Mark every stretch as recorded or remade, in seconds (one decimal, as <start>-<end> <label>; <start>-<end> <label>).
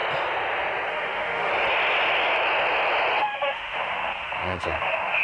0.0-0.9 recorded; 0.9-1.5 remade; 1.5-3.2 recorded; 3.2-5.2 remade